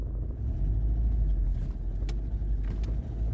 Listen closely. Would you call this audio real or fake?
real